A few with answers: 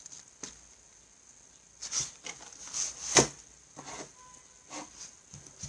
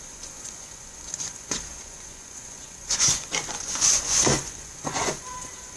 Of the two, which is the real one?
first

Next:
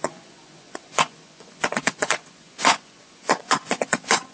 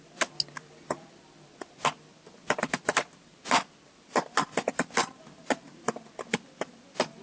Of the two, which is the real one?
second